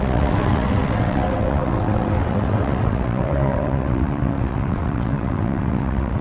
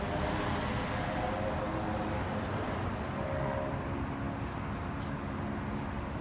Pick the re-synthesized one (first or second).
first